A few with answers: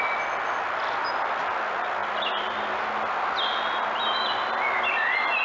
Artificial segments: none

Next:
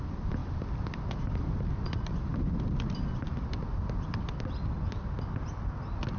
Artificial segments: none

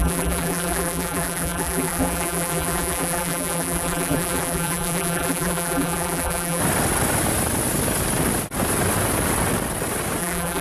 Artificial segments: 0.0-6.6 (vocoder, BigVGAN v2); 10.2-10.6

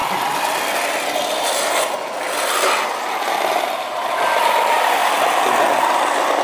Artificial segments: none

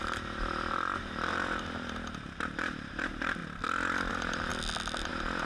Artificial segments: 0.0-3.4 (vocoder, BigVGAN v2); 4.1-4.5; 5.1-5.5

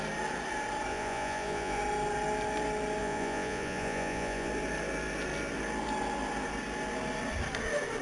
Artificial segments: 0.9-1.8 (vocoder, Vocos); 3.0-4.5

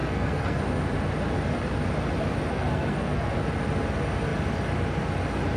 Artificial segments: 0.0-0.6 (codec, SNAC); 2.5-3.3

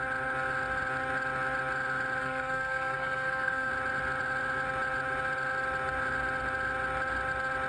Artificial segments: 2.2-3.7 (codec, SNAC)